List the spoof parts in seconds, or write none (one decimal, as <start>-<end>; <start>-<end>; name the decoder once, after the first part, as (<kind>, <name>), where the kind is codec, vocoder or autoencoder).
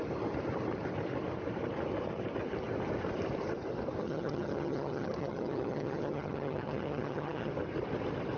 4.0-7.5 (vocoder, HiFi-GAN)